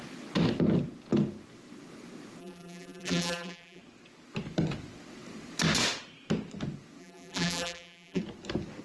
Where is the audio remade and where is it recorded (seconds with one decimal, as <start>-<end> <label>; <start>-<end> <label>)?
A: 0.0-2.4 recorded; 2.4-3.8 remade; 3.8-7.0 recorded; 7.0-8.2 remade; 8.2-8.8 recorded